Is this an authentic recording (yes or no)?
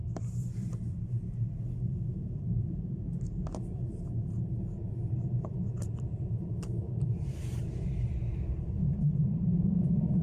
no